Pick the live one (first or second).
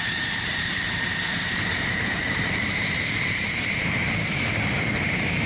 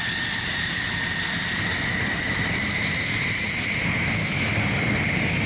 second